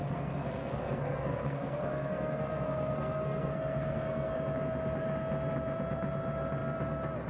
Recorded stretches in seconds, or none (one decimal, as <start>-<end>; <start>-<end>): 4.4-7.3